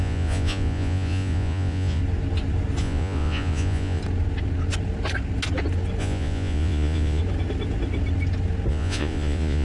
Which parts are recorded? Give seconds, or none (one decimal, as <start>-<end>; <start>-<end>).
2.0-2.8; 4.0-6.0; 7.2-8.7

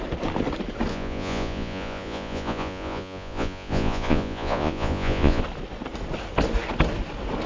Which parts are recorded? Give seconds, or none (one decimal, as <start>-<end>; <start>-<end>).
0.0-0.9; 5.4-7.5

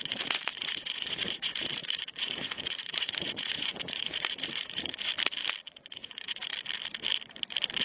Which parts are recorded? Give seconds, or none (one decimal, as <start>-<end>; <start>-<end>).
5.1-5.7; 6.5-7.8

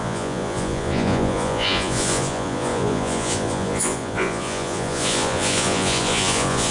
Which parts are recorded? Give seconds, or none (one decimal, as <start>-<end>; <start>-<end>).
none

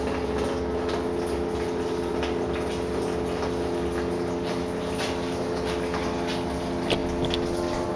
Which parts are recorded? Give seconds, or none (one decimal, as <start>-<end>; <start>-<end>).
0.0-8.0

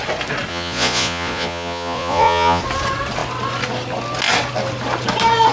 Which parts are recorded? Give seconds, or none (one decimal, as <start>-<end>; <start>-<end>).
0.0-0.5; 2.6-5.5

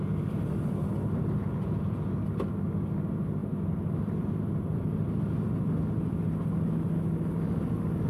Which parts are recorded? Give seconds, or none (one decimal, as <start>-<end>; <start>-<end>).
0.0-1.4; 2.1-8.1

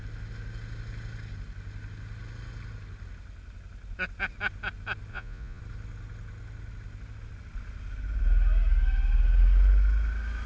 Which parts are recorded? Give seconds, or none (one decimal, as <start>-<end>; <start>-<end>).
0.0-5.1; 5.6-10.5